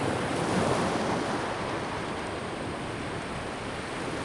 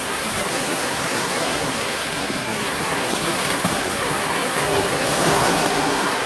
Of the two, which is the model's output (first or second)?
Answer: second